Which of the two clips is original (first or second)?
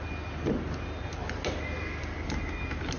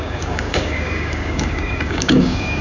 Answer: first